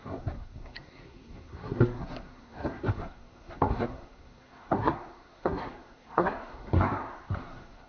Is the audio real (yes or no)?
no